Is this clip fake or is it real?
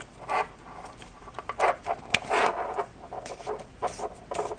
real